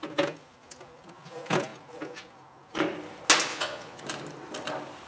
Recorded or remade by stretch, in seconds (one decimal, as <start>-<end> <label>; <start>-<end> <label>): 0.0-3.5 recorded; 3.5-4.0 remade; 4.0-5.1 recorded